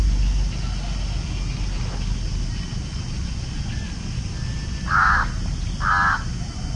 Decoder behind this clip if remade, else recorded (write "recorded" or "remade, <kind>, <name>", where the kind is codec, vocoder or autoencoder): recorded